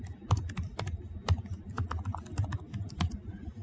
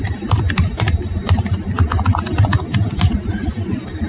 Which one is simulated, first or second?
second